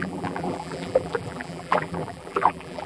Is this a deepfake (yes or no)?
yes